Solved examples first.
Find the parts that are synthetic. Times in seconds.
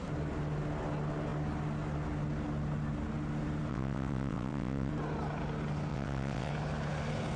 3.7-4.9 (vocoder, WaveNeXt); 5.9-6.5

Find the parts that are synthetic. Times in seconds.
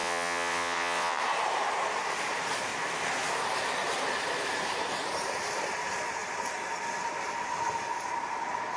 0.0-1.2 (vocoder, WaveNeXt)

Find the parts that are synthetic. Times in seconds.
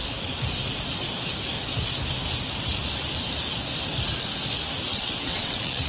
4.9-5.9 (vocoder, WaveNeXt)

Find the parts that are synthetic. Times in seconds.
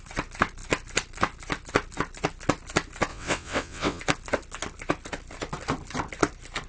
3.1-4.0 (vocoder, WaveNeXt)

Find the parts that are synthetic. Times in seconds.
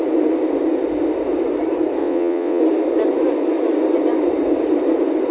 2.0-2.6 (vocoder, WaveNeXt)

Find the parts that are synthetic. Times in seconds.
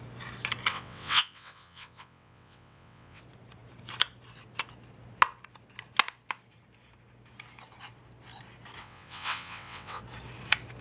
0.7-3.2 (vocoder, WaveNeXt); 8.8-10.0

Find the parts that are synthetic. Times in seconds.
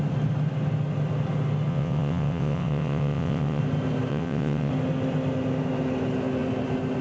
1.7-3.6 (vocoder, WaveNeXt); 4.1-4.7